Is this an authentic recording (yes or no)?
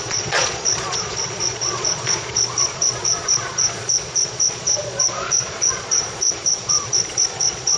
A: no